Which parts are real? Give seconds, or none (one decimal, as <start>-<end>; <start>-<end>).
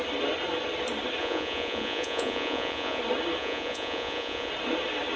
0.0-1.2; 3.0-3.4; 4.5-5.2